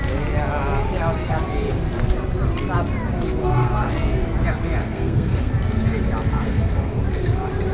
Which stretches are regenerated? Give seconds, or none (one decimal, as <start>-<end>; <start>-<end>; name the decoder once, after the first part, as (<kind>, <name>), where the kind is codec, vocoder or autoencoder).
3.4-3.9 (codec, SNAC); 4.8-5.5; 6.3-7.0